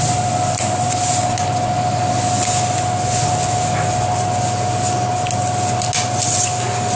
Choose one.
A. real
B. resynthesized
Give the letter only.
A